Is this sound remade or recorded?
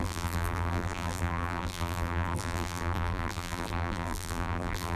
remade